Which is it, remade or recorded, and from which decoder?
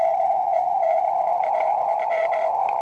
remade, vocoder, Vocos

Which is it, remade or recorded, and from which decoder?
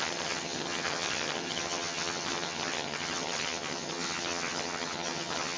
remade, vocoder, HiFi-GAN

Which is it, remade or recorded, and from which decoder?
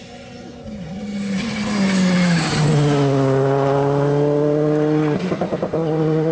recorded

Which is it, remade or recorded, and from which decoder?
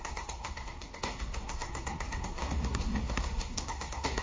remade, codec, SNAC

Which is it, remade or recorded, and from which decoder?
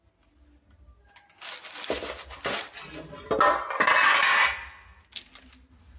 recorded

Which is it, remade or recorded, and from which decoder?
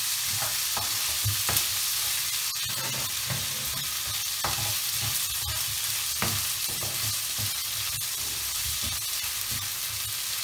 recorded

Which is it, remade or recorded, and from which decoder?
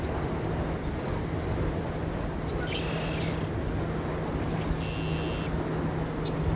recorded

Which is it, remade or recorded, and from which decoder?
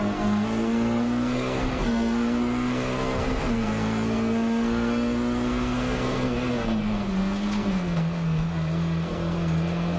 remade, codec, SNAC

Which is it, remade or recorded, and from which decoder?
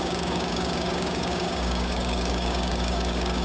remade, codec, DAC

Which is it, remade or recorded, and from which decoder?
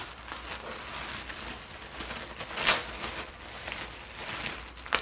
recorded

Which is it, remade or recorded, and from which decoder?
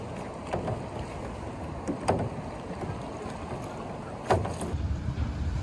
recorded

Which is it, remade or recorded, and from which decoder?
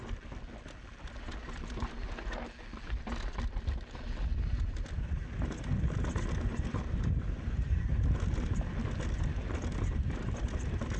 recorded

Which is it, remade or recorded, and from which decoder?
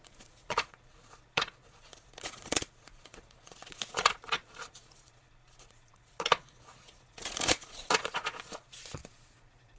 remade, vocoder, Vocos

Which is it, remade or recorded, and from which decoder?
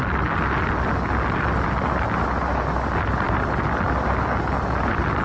recorded